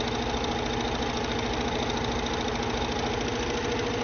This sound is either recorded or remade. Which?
recorded